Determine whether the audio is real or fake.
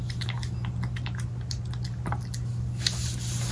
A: real